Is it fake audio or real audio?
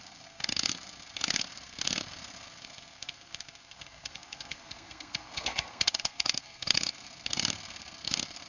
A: fake